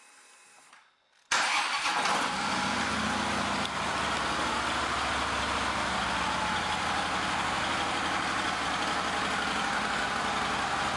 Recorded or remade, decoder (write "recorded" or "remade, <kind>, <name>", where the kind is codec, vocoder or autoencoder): recorded